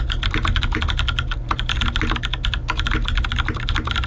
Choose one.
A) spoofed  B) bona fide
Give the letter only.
B